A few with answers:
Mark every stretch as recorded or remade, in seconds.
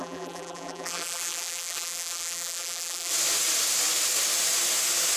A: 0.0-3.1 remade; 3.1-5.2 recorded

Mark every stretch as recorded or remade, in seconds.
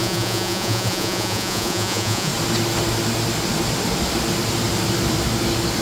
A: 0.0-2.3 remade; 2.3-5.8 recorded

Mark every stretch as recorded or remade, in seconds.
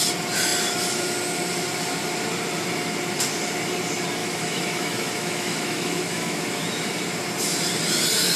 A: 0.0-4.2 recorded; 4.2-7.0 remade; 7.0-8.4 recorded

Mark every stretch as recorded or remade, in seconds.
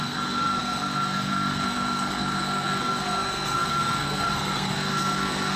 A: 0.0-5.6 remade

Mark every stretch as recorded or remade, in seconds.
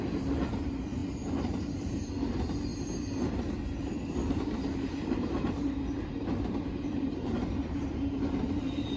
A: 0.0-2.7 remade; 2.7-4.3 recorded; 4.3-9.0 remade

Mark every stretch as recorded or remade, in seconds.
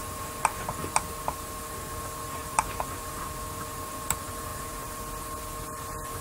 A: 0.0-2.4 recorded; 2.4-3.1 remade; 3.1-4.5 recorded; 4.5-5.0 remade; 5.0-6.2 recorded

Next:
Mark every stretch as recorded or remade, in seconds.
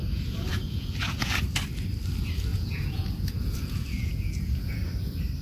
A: 0.0-1.4 remade; 1.4-2.5 recorded; 2.5-4.8 remade; 4.8-5.4 recorded